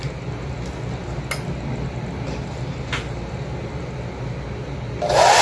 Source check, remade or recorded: recorded